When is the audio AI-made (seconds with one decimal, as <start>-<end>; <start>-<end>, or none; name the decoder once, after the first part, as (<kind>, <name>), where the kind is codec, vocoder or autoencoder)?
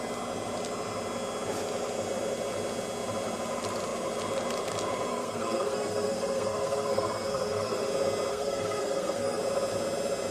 5.1-7.9 (codec, SNAC); 8.3-9.4